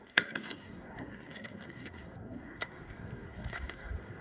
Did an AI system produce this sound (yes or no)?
yes